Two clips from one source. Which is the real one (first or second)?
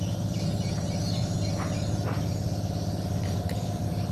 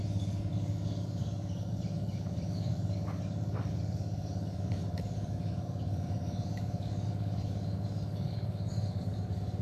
first